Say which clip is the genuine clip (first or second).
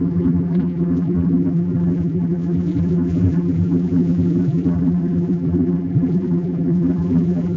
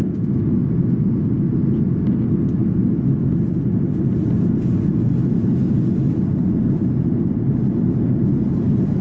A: second